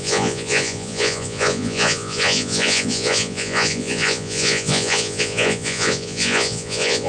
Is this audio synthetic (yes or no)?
yes